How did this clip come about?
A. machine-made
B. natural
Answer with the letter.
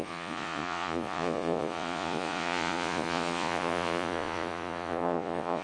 A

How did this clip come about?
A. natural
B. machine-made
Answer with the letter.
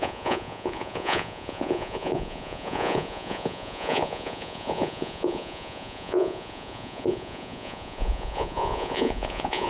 B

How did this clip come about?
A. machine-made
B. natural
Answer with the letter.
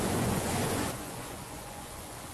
A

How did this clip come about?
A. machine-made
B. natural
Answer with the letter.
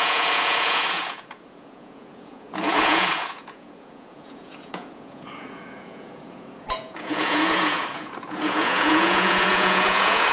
A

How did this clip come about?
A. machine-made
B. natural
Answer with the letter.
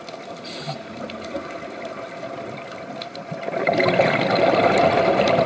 B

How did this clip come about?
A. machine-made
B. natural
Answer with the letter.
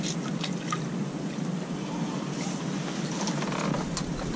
B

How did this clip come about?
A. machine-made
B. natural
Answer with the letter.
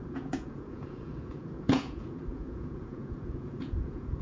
A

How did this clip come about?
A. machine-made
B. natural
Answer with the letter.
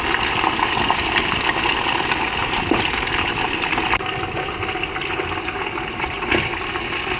B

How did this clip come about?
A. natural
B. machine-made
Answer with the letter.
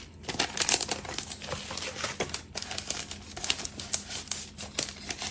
A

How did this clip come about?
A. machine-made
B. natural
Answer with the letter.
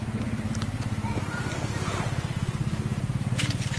B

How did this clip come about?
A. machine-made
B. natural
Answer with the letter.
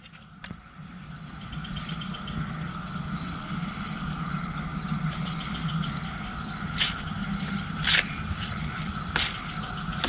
B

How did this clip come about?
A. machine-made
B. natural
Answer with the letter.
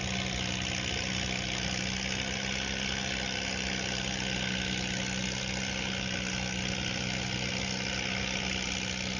B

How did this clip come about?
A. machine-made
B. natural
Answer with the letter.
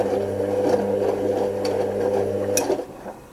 B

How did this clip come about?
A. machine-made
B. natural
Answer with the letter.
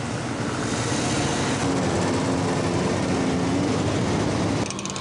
B